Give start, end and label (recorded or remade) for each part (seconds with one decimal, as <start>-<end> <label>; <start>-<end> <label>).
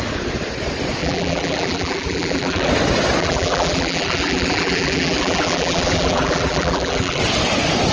0.0-1.0 recorded; 1.0-2.7 remade; 2.7-3.2 recorded; 3.2-7.2 remade; 7.2-7.9 recorded